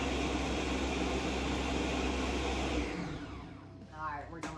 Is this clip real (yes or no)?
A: yes